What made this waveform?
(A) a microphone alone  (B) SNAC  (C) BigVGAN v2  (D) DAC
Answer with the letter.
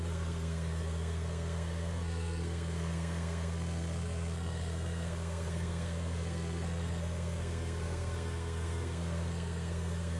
B